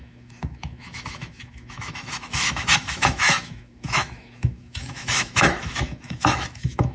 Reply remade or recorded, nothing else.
remade